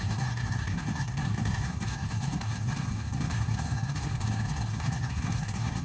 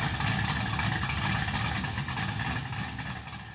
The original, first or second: second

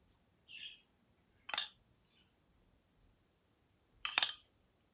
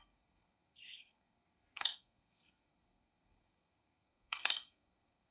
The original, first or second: first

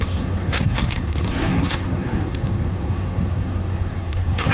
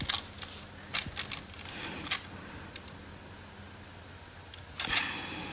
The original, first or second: second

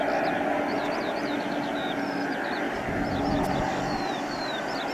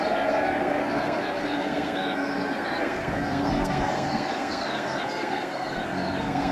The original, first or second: first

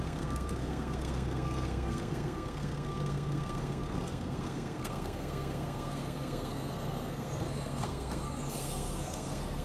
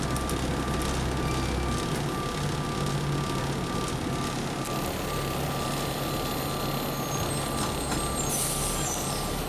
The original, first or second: second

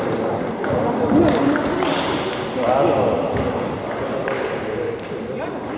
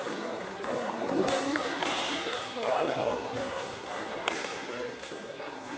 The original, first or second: first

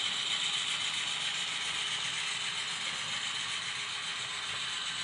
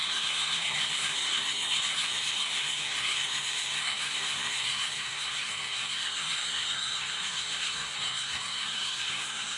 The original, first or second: first